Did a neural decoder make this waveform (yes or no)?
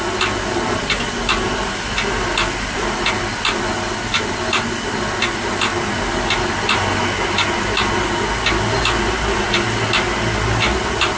no